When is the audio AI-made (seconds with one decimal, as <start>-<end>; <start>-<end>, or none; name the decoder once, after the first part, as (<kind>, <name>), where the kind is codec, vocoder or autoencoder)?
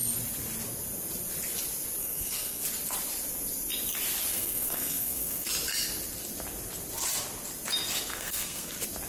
2.0-2.6 (codec, SNAC); 4.3-5.5; 8.1-8.7